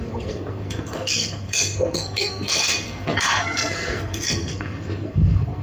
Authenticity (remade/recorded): remade